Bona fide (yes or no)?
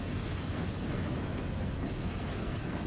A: no